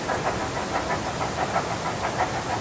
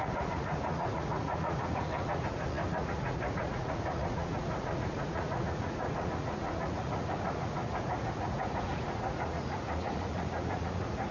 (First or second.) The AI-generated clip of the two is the second